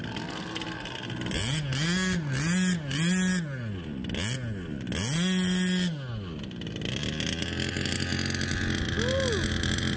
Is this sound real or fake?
real